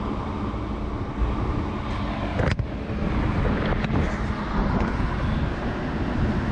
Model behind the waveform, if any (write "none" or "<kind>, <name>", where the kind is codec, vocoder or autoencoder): none